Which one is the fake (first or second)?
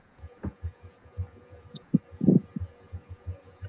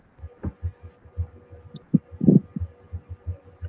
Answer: first